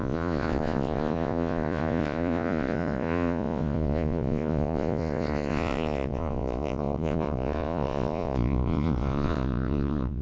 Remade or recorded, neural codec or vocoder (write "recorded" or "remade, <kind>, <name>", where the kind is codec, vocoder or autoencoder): remade, vocoder, Vocos